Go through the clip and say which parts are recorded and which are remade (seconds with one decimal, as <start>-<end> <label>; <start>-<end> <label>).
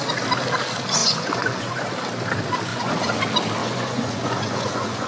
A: 0.0-1.0 recorded; 1.0-1.9 remade; 1.9-2.7 recorded; 2.7-3.2 remade; 3.2-3.6 recorded; 3.6-5.1 remade